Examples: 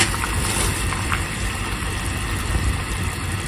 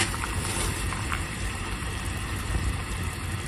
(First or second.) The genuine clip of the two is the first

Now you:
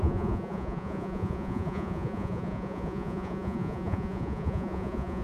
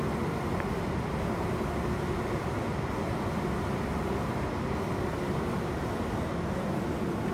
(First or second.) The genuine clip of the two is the second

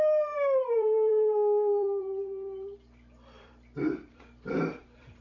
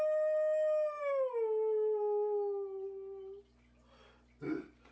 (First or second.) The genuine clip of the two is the second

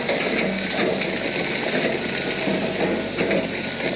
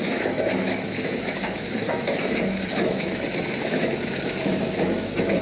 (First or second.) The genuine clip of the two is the first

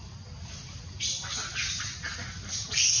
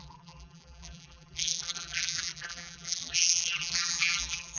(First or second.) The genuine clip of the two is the first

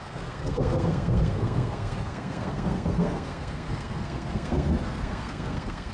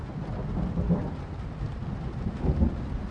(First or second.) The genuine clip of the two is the second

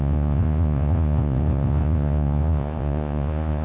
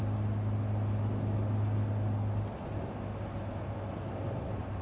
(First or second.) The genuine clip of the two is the second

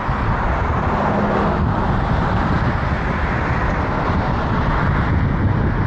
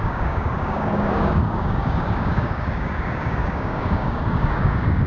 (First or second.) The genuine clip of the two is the first